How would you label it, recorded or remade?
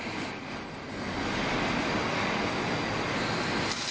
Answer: recorded